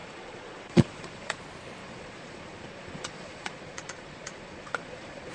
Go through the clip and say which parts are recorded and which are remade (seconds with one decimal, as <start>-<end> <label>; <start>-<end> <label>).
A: 0.0-1.4 remade; 1.4-1.8 recorded; 1.8-5.3 remade

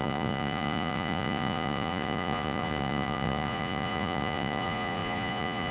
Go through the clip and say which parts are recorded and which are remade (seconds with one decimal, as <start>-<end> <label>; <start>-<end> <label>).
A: 0.0-5.7 remade

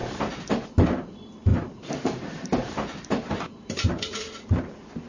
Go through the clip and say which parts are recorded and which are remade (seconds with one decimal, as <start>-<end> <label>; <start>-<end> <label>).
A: 0.0-0.5 remade; 0.5-1.5 recorded; 1.5-4.6 remade; 4.6-5.1 recorded

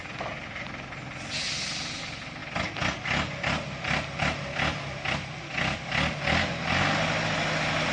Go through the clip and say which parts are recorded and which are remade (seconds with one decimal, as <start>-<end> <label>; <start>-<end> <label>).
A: 0.0-7.9 recorded